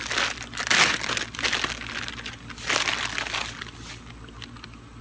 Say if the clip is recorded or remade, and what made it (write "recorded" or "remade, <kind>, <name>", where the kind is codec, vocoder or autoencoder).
recorded